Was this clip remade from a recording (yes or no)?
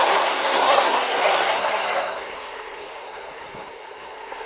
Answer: yes